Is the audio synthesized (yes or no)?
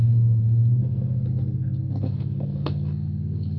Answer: yes